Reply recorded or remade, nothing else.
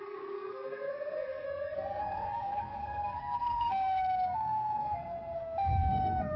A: remade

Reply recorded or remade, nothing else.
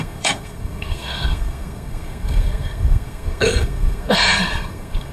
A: remade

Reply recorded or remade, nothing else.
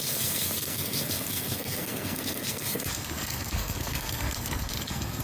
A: remade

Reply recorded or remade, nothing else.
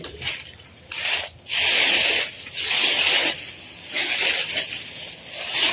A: recorded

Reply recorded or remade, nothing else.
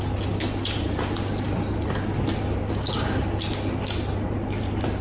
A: recorded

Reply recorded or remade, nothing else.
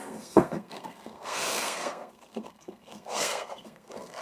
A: remade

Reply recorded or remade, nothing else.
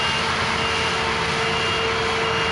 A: recorded